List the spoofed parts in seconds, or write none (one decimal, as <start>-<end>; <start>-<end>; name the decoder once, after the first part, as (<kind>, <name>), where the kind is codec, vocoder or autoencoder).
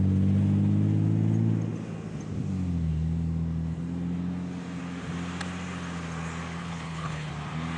6.6-7.3 (codec, HILCodec)